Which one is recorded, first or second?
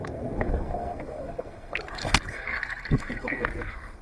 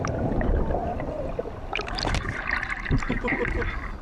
second